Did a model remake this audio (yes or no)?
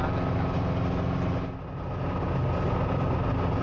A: no